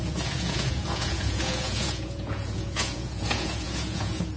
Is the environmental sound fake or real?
fake